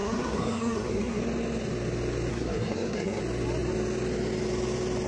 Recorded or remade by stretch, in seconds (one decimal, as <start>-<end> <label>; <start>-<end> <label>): 0.0-1.2 remade; 1.2-2.3 recorded; 2.3-3.2 remade; 3.2-5.1 recorded